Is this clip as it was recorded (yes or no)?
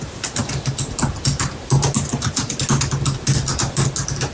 yes